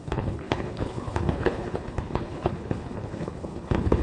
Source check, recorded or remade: remade